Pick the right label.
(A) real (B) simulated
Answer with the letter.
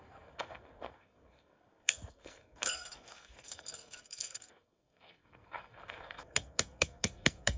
B